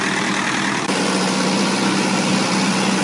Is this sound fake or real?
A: real